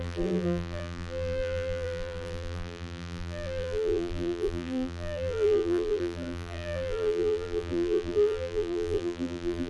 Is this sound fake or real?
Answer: fake